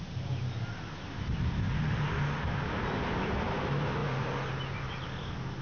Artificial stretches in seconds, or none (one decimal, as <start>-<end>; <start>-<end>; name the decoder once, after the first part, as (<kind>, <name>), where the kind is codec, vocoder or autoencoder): none